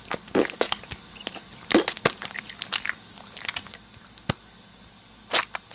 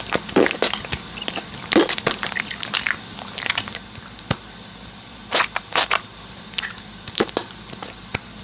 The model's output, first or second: second